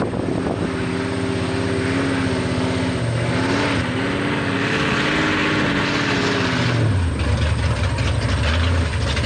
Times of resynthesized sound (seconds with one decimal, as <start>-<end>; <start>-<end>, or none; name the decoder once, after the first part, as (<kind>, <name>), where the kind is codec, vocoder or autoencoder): none